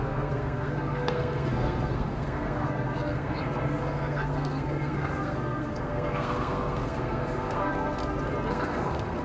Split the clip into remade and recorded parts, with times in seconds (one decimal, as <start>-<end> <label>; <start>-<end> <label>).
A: 0.0-8.0 remade; 8.0-8.5 recorded; 8.5-9.2 remade